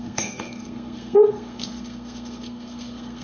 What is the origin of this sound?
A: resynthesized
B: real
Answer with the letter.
A